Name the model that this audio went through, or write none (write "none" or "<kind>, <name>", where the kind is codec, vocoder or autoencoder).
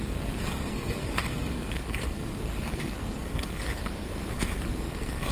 codec, SNAC